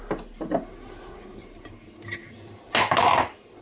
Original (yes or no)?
yes